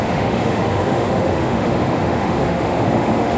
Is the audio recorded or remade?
remade